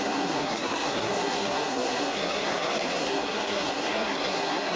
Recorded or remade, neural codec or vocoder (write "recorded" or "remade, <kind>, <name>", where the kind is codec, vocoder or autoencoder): remade, codec, SNAC